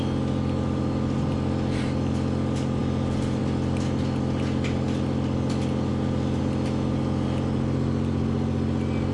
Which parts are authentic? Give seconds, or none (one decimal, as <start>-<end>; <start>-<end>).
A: 0.0-9.1